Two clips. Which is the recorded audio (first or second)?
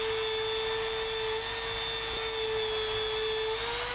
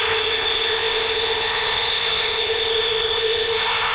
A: first